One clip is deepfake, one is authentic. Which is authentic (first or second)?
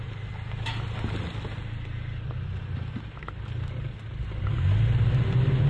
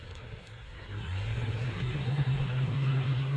first